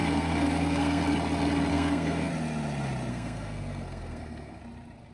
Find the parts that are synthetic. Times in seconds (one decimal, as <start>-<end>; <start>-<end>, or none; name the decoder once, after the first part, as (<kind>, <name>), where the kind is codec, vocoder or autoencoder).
0.0-1.0 (codec, SNAC); 1.7-2.3; 3.1-4.6